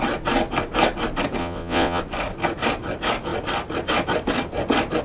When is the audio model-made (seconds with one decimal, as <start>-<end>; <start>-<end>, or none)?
1.4-2.0